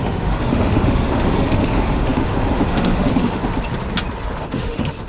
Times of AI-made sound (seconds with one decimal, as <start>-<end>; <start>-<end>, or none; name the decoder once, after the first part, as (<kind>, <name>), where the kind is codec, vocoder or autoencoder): 0.0-3.4 (autoencoder, DAC-VAE); 4.4-5.1